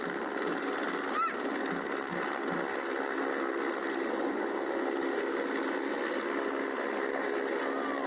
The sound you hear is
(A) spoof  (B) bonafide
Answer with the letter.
B